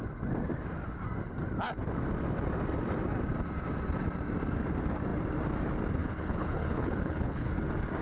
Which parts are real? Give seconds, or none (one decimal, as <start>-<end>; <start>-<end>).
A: 0.0-6.0; 7.5-8.0